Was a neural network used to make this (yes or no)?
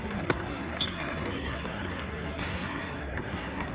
yes